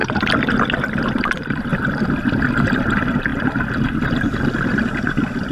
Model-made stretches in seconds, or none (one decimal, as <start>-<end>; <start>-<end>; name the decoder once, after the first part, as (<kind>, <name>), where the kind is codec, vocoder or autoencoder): none